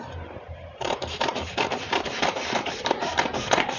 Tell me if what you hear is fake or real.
fake